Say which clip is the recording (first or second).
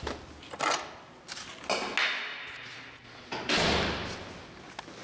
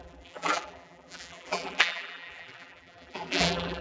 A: first